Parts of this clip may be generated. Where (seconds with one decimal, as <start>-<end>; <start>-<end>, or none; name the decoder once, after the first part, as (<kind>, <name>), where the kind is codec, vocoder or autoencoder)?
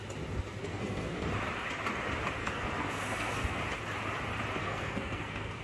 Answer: 0.6-1.3 (codec, SNAC); 2.4-3.6; 4.6-5.6